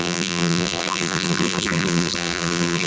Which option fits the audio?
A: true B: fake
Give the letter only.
B